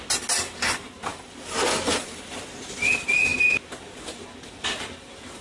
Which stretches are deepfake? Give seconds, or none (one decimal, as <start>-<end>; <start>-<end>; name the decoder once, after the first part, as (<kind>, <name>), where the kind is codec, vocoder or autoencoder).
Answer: 1.1-2.4 (vocoder, BigVGAN v2)